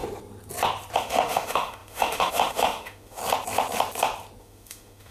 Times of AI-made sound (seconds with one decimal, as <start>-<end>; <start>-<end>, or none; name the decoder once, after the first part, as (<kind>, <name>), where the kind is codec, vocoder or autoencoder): 1.0-3.2 (autoencoder, DAC-VAE); 4.4-5.1